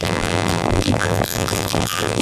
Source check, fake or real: fake